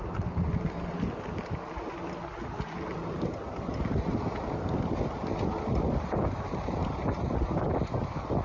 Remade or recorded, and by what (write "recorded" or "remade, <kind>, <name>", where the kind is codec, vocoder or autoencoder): recorded